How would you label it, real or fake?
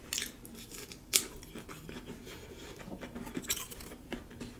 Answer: real